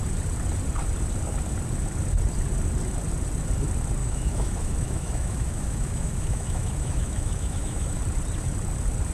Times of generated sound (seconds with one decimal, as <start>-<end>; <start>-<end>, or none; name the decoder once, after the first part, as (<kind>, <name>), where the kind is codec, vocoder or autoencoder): 4.0-8.0 (autoencoder, DAC-VAE)